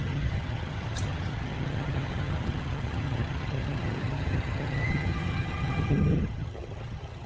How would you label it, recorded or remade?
remade